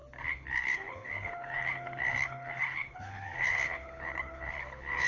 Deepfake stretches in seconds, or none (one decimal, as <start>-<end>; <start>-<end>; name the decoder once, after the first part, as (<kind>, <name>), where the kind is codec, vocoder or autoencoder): 0.0-5.1 (codec, HILCodec)